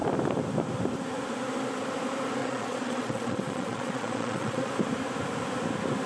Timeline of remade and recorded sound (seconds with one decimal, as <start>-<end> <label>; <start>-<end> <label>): 0.0-2.4 recorded; 2.4-4.7 remade; 4.7-6.1 recorded